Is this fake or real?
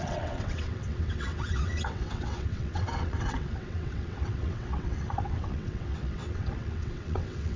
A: fake